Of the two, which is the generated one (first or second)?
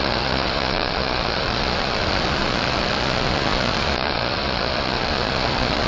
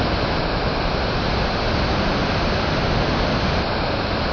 first